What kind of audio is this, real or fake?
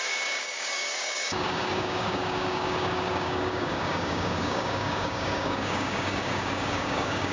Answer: fake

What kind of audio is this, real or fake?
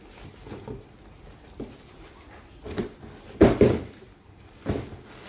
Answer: real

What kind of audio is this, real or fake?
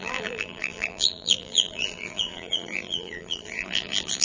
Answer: fake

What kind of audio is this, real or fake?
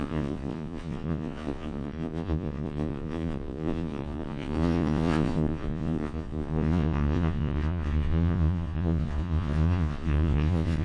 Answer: fake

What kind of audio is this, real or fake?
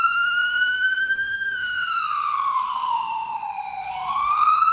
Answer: fake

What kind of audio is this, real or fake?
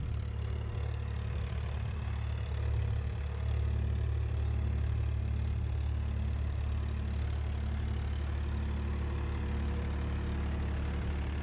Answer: real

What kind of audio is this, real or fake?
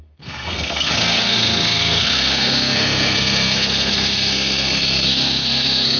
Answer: fake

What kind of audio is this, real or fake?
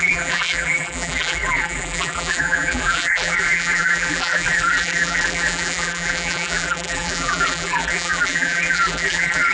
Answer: fake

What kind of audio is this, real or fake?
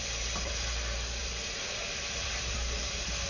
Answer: fake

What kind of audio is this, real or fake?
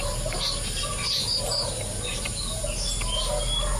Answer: real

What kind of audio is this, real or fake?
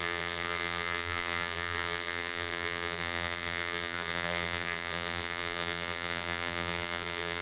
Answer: fake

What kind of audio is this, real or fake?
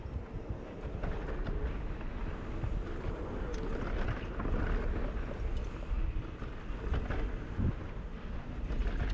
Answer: real